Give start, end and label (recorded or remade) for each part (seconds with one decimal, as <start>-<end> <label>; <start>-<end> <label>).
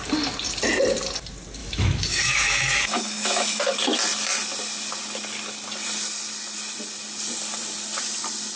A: 0.0-1.6 recorded; 1.6-3.6 remade; 3.6-8.6 recorded